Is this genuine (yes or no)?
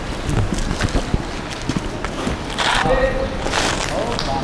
yes